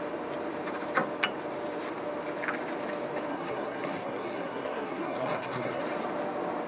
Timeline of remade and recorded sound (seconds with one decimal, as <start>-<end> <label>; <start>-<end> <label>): 0.0-3.3 recorded; 3.3-5.8 remade; 5.8-6.7 recorded